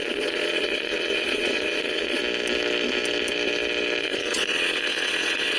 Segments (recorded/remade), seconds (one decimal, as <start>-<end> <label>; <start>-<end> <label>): 0.0-2.2 remade; 2.2-4.0 recorded; 4.0-5.6 remade